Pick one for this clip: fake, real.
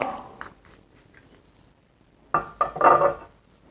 real